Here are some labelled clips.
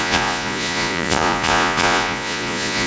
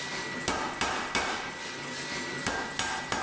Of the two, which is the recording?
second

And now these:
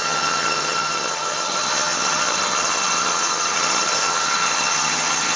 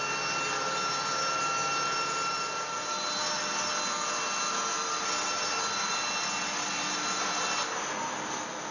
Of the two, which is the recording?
second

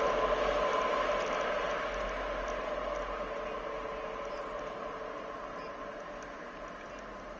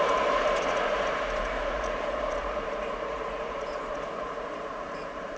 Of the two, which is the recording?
first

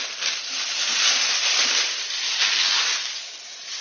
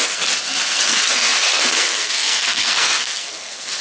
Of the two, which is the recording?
first